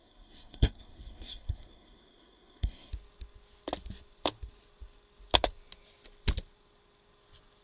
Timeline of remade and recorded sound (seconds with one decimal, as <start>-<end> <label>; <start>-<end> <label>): 0.0-2.9 remade; 2.9-7.6 recorded